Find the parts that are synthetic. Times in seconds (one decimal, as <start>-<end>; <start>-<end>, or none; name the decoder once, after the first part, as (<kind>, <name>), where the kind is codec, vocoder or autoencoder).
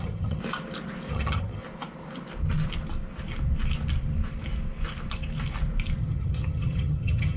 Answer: 0.0-0.4 (vocoder, HiFi-GAN); 1.1-1.6; 6.0-7.4